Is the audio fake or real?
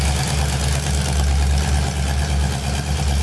real